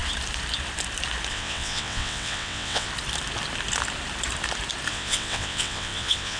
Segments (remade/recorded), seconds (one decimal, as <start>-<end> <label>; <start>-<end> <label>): 0.0-1.3 recorded; 1.3-2.9 remade; 2.9-4.9 recorded; 4.9-6.4 remade